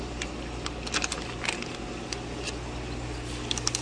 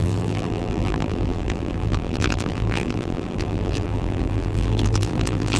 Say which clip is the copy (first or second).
second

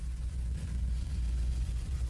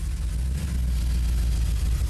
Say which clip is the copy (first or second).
first